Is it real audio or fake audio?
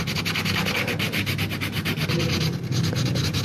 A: real